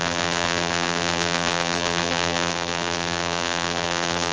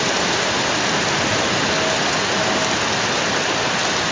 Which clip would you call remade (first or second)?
first